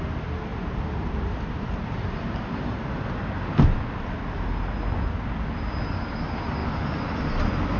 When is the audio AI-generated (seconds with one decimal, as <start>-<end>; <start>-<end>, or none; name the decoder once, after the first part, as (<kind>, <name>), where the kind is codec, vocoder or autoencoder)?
0.5-3.8 (vocoder, BigVGAN v2)